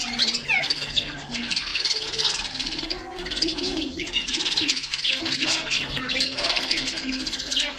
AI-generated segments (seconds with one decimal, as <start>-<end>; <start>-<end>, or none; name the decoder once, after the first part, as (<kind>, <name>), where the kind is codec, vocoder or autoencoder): 0.6-7.8 (codec, SNAC)